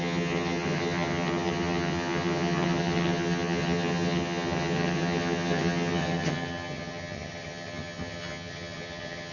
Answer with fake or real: fake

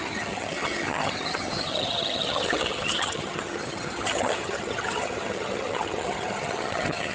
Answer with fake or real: fake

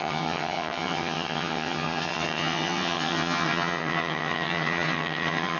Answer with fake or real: fake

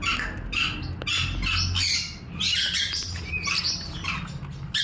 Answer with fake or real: real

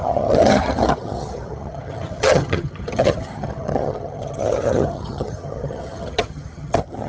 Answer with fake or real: fake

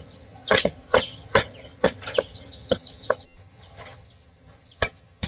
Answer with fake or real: fake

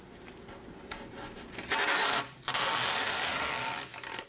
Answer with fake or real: real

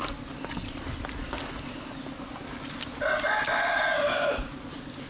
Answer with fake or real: real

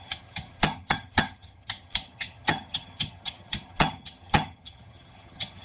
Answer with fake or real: fake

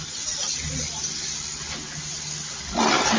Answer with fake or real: real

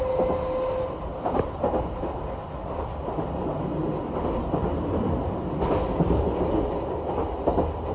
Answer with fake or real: real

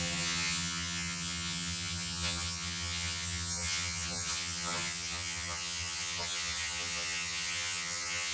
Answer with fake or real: fake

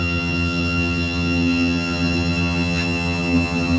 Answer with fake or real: fake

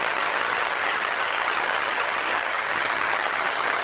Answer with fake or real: fake